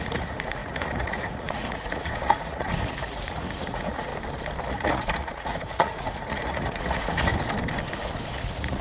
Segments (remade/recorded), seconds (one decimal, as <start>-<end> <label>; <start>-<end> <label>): 0.0-4.1 remade; 4.1-4.7 recorded; 4.7-7.3 remade; 7.3-8.3 recorded; 8.3-8.8 remade